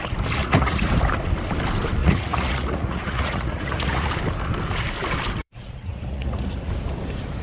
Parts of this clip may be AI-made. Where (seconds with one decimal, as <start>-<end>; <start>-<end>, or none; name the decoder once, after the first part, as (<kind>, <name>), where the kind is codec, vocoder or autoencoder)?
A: 0.4-0.9 (vocoder, Vocos); 2.0-4.1; 5.4-6.7